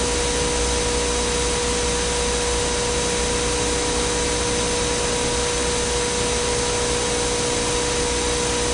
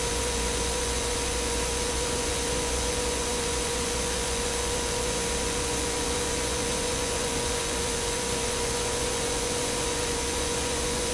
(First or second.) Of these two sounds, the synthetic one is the second